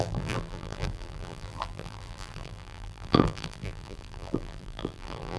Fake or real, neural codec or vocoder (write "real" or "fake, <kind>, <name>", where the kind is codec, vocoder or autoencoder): fake, vocoder, BigVGAN v2